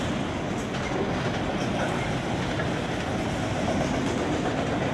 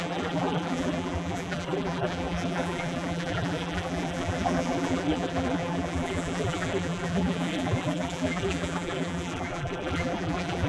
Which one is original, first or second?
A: first